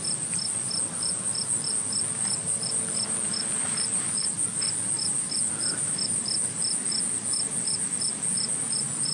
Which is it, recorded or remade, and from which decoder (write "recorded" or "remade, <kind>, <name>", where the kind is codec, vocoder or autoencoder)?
recorded